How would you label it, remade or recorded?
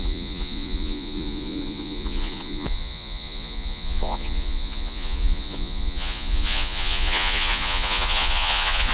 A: remade